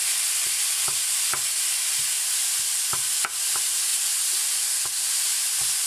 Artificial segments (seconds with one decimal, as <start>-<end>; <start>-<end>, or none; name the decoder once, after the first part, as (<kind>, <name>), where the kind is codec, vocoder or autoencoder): 2.4-3.9 (vocoder, BigVGAN v2)